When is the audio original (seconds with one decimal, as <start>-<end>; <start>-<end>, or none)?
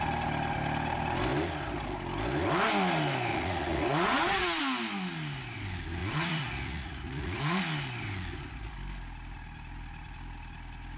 0.0-3.3; 4.6-6.0; 7.6-11.0